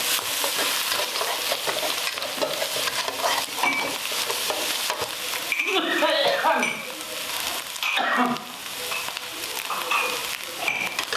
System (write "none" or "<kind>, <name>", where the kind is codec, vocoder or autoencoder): none